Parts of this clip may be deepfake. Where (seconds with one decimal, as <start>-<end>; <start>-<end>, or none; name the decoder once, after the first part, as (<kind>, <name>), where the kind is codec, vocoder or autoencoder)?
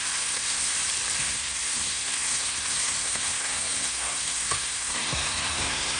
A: 0.0-0.7 (codec, SNAC); 1.2-6.0